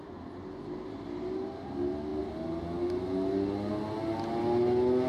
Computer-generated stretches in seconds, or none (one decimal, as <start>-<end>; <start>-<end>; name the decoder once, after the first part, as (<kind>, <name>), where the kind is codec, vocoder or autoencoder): none